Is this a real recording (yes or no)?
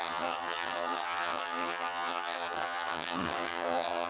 no